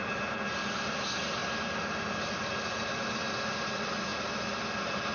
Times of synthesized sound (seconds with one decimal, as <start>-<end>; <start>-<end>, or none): none